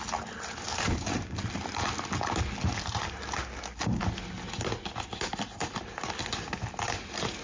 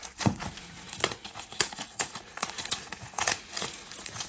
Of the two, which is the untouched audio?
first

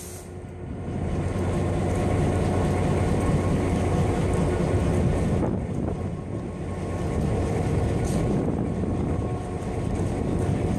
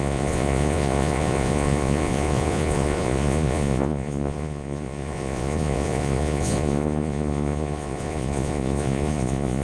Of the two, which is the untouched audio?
first